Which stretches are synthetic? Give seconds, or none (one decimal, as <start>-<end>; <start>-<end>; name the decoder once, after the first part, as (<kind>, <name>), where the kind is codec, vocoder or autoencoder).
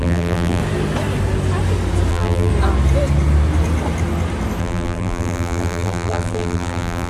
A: 0.0-0.6 (vocoder, BigVGAN v2); 2.1-2.5; 4.6-7.1